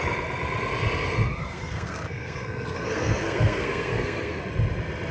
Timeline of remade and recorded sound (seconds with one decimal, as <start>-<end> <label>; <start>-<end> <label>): 0.0-1.3 recorded; 1.3-4.4 remade; 4.4-5.1 recorded